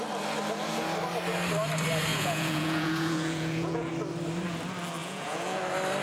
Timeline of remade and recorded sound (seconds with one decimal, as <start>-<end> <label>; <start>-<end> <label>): 0.0-2.1 recorded; 2.1-3.9 remade; 3.9-5.0 recorded; 5.0-5.6 remade; 5.6-6.0 recorded